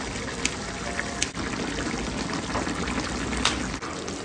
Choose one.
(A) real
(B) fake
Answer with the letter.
A